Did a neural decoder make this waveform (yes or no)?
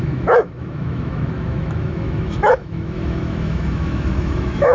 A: yes